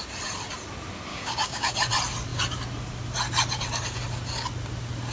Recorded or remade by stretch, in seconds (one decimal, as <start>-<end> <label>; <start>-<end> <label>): 0.0-1.1 recorded; 1.1-1.7 remade; 1.7-5.1 recorded